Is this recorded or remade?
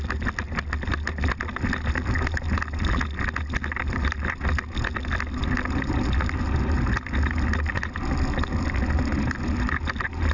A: recorded